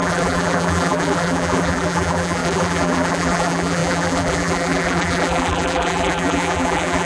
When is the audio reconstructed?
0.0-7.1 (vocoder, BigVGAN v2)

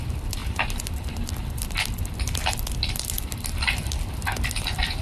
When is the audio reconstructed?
0.0-5.0 (vocoder, BigVGAN v2)